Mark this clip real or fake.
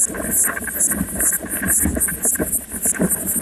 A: real